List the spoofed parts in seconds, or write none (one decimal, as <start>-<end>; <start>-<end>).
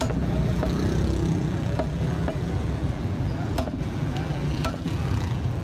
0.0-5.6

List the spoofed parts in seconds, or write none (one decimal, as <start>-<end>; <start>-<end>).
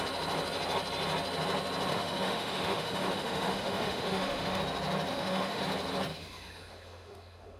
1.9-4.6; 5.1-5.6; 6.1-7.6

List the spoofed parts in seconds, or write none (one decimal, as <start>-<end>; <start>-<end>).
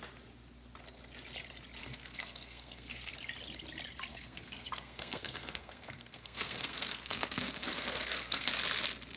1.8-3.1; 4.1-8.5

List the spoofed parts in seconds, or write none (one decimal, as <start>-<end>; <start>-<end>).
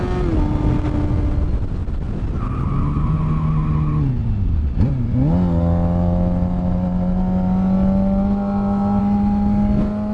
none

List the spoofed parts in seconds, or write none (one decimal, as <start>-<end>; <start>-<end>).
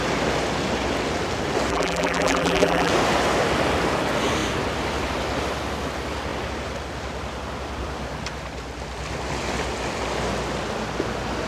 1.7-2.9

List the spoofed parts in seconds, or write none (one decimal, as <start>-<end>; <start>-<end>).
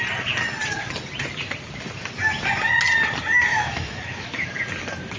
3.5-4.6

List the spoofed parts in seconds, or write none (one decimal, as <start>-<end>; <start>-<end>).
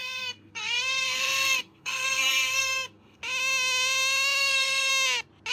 0.0-3.2; 4.4-4.9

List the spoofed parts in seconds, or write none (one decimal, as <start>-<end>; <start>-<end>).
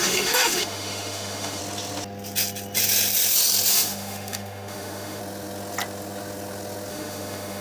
0.0-1.6; 3.7-5.2; 6.9-7.6